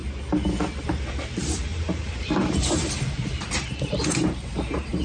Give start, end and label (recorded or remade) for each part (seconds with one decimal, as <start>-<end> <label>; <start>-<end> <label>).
0.0-0.8 recorded; 0.8-5.0 remade